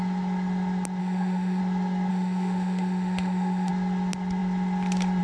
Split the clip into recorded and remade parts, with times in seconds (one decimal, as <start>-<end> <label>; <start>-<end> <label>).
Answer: 0.0-1.0 recorded; 1.0-1.6 remade; 1.6-2.1 recorded; 2.1-3.7 remade; 3.7-5.2 recorded